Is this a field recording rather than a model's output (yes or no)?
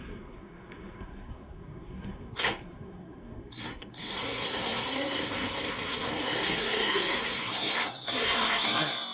no